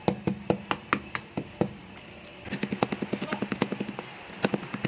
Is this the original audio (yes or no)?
yes